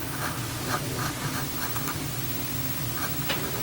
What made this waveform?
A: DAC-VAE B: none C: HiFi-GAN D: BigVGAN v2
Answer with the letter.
B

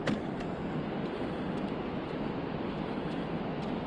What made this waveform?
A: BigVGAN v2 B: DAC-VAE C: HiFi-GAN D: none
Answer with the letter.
D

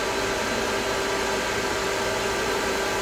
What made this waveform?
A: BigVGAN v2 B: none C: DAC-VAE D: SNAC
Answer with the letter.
B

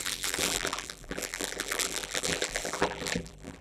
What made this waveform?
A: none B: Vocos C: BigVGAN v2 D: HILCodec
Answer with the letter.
C